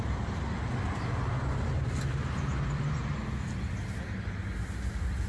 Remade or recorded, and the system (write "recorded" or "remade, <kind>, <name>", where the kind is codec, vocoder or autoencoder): recorded